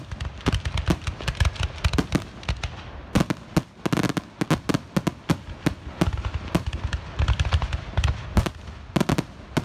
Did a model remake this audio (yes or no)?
no